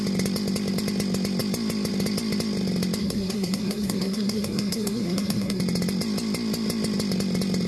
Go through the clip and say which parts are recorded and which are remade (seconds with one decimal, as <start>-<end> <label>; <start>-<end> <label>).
0.0-3.0 recorded; 3.0-5.6 remade; 5.6-7.7 recorded